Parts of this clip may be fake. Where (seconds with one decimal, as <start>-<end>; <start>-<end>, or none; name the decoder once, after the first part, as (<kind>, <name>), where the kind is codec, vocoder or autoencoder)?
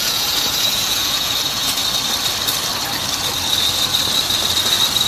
0.0-1.8 (vocoder, Vocos)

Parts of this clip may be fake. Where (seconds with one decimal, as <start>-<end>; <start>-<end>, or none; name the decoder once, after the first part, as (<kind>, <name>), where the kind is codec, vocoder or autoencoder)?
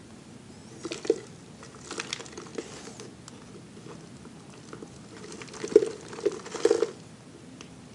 none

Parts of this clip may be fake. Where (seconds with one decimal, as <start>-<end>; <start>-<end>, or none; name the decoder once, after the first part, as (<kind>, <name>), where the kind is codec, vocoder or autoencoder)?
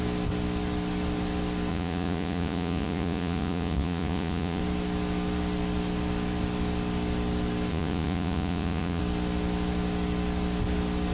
1.7-4.6 (vocoder, Vocos); 7.7-9.0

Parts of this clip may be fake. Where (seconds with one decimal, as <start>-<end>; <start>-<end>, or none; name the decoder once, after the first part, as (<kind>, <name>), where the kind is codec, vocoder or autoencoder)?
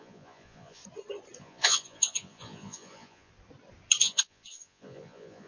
0.0-0.8 (vocoder, Vocos); 1.4-3.3; 4.0-5.5